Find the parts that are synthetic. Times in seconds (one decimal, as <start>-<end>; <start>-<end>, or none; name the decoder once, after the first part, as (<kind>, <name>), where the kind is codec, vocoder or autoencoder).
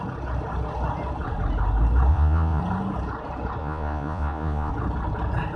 2.1-2.6 (vocoder, Vocos); 3.6-4.7